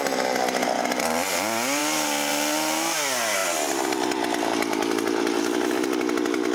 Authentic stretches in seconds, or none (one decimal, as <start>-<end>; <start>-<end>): 0.0-6.5